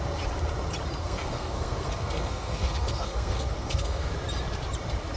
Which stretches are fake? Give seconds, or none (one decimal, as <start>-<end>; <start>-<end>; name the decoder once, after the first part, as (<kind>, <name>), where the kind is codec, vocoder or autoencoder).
1.0-4.1 (codec, SNAC)